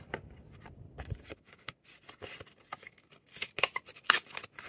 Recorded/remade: recorded